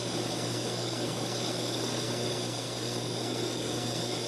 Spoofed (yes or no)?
yes